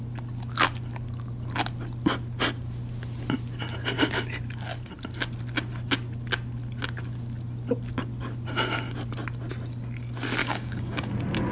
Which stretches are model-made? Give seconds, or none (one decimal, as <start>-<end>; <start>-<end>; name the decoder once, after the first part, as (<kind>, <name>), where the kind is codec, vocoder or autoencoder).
10.4-11.1 (codec, DAC)